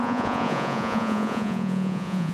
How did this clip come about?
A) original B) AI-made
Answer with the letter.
B